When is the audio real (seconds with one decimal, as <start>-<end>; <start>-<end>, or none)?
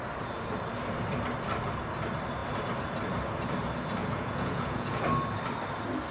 0.0-4.0; 5.0-6.1